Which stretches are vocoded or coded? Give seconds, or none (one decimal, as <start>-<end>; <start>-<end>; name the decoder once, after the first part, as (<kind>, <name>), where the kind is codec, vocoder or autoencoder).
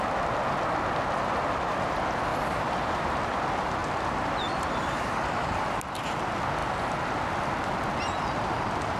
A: 2.3-3.0 (vocoder, BigVGAN v2)